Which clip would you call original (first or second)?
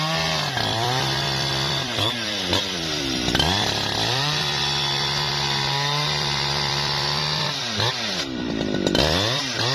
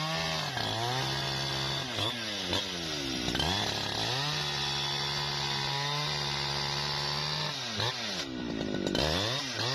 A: second